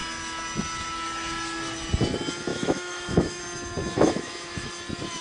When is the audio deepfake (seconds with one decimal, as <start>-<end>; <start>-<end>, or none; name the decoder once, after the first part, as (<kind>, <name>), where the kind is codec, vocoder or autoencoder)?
2.5-3.4 (autoencoder, DAC-VAE); 3.8-4.7